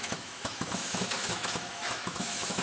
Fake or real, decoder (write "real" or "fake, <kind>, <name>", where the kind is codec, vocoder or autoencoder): fake, autoencoder, DAC-VAE